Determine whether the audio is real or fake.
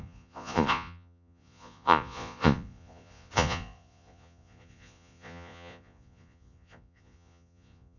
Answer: fake